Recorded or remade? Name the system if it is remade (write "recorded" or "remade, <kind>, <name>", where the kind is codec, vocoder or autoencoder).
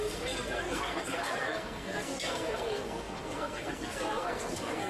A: remade, codec, SNAC